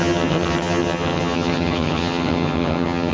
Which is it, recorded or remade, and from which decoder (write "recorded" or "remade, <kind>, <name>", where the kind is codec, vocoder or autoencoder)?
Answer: remade, vocoder, HiFi-GAN